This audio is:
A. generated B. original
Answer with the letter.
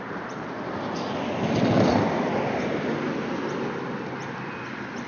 B